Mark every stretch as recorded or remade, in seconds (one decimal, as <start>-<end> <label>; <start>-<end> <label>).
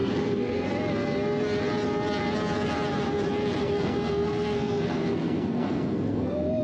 0.0-0.7 remade; 0.7-3.6 recorded; 3.6-6.6 remade